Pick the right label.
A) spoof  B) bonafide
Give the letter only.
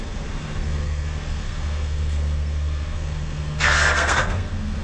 A